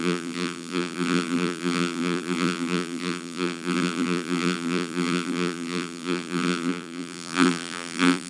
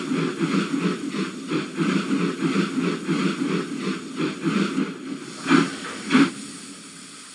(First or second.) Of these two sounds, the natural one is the second